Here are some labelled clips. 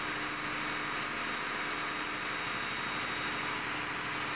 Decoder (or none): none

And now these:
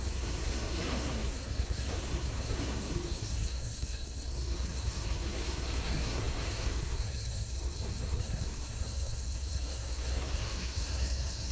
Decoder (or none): codec, SNAC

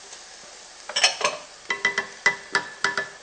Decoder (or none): none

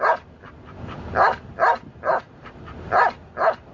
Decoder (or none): none